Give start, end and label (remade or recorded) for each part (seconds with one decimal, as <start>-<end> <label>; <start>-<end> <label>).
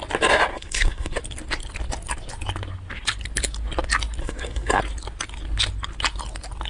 0.0-0.5 recorded; 0.5-1.2 remade; 1.2-4.2 recorded; 4.2-4.8 remade; 4.8-6.7 recorded